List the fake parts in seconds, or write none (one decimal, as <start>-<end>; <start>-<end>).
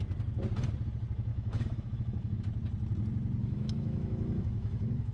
1.3-2.4; 3.4-5.1